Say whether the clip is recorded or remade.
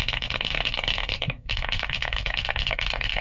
remade